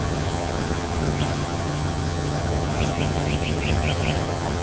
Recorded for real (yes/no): no